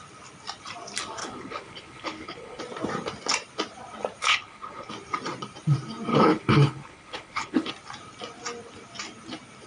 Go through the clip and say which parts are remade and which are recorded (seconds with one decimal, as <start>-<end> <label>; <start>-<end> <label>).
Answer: 0.0-1.2 recorded; 1.2-2.6 remade; 2.6-4.2 recorded; 4.2-4.9 remade; 4.9-6.1 recorded; 6.1-7.7 remade; 7.7-9.7 recorded